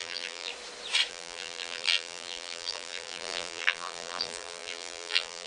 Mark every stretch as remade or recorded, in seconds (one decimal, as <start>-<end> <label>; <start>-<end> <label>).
0.0-0.5 remade; 0.5-1.1 recorded; 1.1-5.5 remade